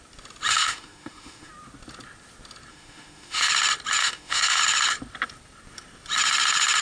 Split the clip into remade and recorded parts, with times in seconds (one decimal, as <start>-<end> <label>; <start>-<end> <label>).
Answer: 0.0-0.6 recorded; 0.6-1.5 remade; 1.5-2.7 recorded; 2.7-3.5 remade; 3.5-4.0 recorded; 4.0-4.6 remade; 4.6-6.8 recorded

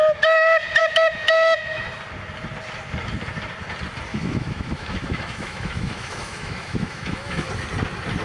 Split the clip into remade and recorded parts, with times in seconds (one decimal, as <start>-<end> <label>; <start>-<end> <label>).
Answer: 0.0-0.8 recorded; 0.8-1.7 remade; 1.7-4.1 recorded; 4.1-7.5 remade; 7.5-8.2 recorded

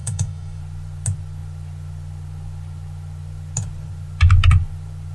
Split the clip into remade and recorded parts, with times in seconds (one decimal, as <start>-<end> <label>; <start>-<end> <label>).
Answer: 0.0-0.6 remade; 0.6-5.1 recorded

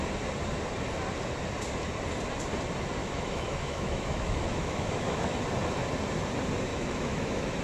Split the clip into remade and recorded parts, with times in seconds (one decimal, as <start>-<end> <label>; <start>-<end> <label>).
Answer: 0.0-3.0 recorded; 3.0-5.4 remade; 5.4-6.7 recorded; 6.7-7.6 remade

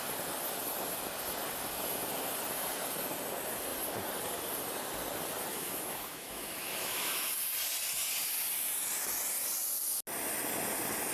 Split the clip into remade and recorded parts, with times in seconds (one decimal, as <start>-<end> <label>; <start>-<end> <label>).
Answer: 0.0-5.5 recorded; 5.5-7.3 remade; 7.3-11.1 recorded

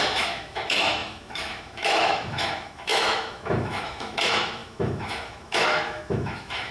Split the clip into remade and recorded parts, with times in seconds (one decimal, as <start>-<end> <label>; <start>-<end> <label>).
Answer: 0.0-6.7 remade